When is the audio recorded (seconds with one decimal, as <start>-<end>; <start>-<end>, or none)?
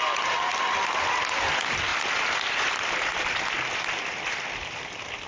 0.0-5.3